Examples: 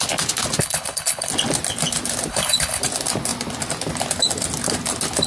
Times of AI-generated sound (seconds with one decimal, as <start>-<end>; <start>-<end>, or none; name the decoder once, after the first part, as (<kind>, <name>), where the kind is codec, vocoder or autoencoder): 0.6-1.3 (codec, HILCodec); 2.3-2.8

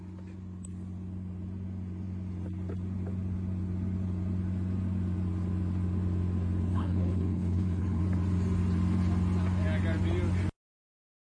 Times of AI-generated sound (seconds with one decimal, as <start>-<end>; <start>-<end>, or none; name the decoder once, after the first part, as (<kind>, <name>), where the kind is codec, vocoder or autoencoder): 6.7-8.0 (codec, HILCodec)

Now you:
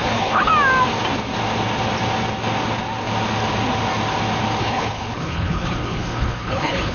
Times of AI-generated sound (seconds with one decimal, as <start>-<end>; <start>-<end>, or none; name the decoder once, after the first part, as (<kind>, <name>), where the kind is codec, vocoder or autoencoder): 0.0-0.5 (codec, HILCodec); 4.6-6.9

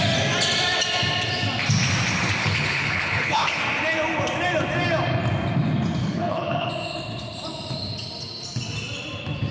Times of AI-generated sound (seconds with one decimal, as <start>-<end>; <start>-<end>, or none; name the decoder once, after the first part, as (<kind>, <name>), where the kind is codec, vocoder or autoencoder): 2.4-3.6 (codec, HILCodec); 6.0-6.7